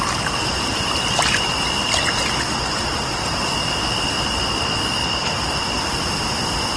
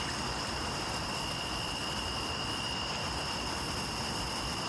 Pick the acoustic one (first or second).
first